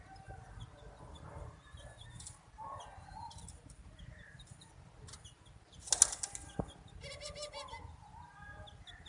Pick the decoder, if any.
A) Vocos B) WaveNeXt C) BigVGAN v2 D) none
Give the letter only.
D